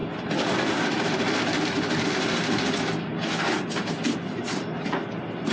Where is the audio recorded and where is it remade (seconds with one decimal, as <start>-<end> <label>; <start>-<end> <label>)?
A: 0.0-5.5 recorded